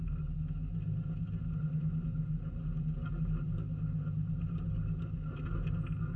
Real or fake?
real